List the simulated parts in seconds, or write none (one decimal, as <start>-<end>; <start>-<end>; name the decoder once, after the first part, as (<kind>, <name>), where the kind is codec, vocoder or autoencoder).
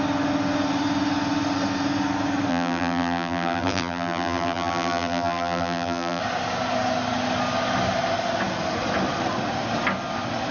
2.5-6.2 (vocoder, BigVGAN v2)